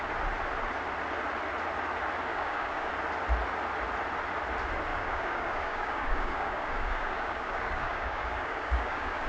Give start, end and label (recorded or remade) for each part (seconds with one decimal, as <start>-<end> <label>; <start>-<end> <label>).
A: 0.0-2.3 recorded; 2.3-2.9 remade; 2.9-4.9 recorded; 4.9-9.3 remade